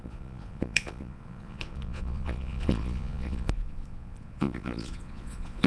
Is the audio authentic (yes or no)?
no